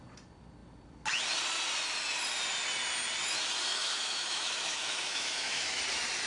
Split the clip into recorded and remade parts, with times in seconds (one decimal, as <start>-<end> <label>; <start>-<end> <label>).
0.0-3.7 recorded; 3.7-5.8 remade; 5.8-6.3 recorded